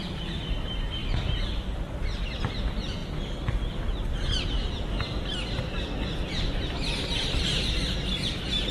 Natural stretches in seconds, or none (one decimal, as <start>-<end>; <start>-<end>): 0.0-8.7